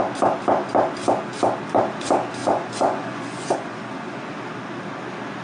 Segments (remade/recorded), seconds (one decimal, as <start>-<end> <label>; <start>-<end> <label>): 0.0-2.4 recorded; 2.4-4.3 remade; 4.3-5.4 recorded